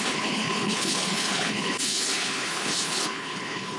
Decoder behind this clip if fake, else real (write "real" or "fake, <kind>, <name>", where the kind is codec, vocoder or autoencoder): fake, codec, HILCodec